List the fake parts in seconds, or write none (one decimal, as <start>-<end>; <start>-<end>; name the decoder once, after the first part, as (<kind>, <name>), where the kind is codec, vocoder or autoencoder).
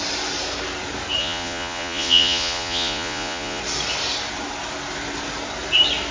1.2-3.6 (vocoder, Vocos)